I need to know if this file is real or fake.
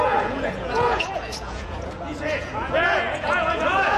fake